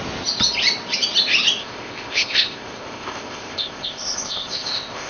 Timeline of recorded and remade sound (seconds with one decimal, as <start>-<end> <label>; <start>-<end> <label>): 0.0-1.6 recorded; 1.6-5.1 remade